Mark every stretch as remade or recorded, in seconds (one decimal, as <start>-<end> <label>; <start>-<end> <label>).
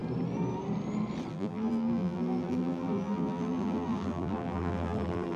0.0-1.3 recorded; 1.3-5.4 remade